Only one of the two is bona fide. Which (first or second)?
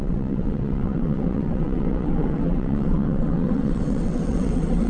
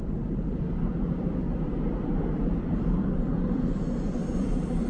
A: second